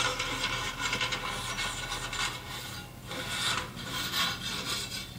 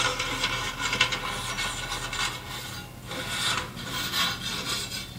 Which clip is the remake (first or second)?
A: first